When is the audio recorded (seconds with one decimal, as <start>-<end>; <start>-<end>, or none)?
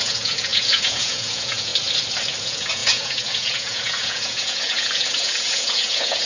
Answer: 1.7-2.4